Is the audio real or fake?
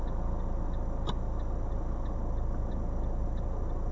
real